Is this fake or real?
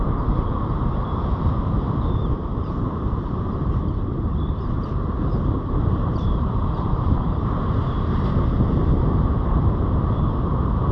fake